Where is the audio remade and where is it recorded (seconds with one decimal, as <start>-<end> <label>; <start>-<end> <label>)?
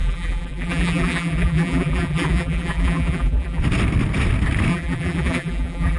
0.0-3.6 remade; 3.6-4.7 recorded; 4.7-6.0 remade